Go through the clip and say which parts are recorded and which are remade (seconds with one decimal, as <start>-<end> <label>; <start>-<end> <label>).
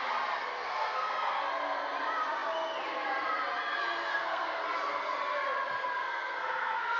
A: 0.0-0.5 recorded; 0.5-1.4 remade; 1.4-4.1 recorded; 4.1-4.6 remade; 4.6-6.0 recorded; 6.0-7.0 remade